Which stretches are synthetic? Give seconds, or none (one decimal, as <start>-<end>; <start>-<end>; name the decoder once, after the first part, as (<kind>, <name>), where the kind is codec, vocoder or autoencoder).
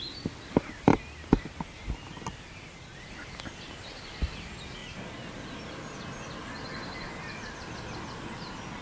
none